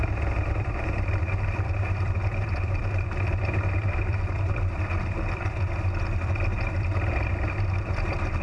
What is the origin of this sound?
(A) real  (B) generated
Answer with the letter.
B